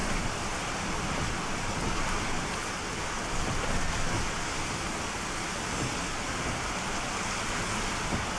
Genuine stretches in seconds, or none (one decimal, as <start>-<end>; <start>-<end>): 0.0-8.4